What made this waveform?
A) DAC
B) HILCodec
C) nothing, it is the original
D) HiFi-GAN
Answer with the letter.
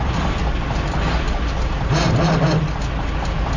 C